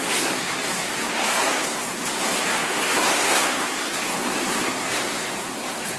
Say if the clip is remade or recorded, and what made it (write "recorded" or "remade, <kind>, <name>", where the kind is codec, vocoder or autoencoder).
remade, codec, SNAC